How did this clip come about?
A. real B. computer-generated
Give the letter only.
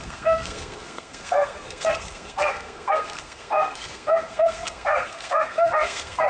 B